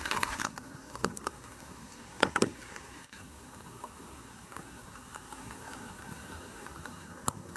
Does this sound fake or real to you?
fake